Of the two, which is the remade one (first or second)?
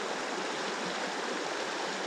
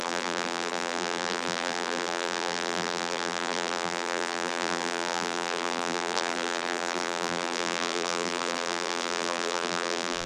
second